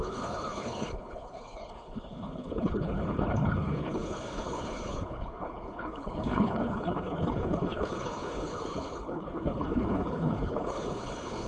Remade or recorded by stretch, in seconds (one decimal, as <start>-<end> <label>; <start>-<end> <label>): 0.0-11.5 remade